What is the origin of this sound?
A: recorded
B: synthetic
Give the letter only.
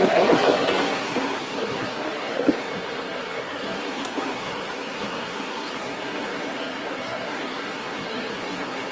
B